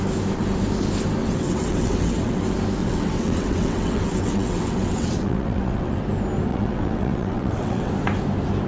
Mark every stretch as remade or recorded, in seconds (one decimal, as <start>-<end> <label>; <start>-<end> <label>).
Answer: 0.0-1.2 recorded; 1.2-2.4 remade; 2.4-2.8 recorded; 2.8-6.0 remade; 6.0-6.5 recorded; 6.5-7.9 remade; 7.9-8.7 recorded